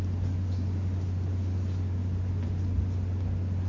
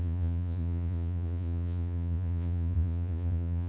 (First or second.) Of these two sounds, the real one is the first